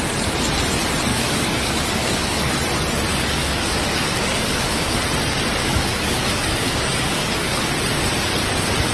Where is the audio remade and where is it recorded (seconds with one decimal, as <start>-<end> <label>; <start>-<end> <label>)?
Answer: 0.0-1.1 recorded; 1.1-2.5 remade; 2.5-3.1 recorded; 3.1-5.0 remade; 5.0-5.6 recorded; 5.6-7.7 remade; 7.7-8.9 recorded